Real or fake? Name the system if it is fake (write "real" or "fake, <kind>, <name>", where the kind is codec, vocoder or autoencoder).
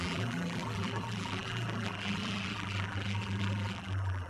fake, vocoder, BigVGAN v2